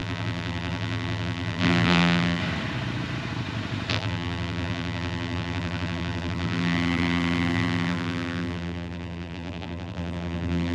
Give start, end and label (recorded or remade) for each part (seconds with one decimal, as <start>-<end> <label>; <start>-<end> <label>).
0.0-2.4 remade; 2.4-3.9 recorded; 3.9-10.7 remade